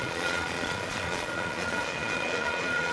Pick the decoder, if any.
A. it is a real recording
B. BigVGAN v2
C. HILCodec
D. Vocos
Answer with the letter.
D